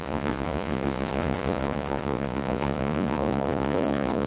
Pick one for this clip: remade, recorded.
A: remade